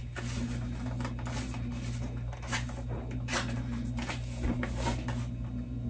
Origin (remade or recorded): recorded